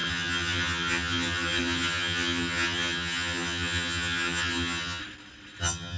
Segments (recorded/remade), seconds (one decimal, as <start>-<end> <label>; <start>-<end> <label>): 0.0-5.0 remade; 5.0-5.6 recorded; 5.6-6.0 remade